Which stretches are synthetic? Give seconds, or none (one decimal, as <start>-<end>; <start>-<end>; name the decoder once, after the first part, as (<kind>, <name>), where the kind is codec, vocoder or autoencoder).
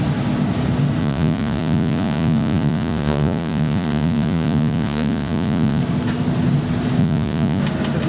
1.0-5.8 (vocoder, Vocos); 7.0-7.6